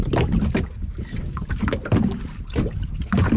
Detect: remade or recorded recorded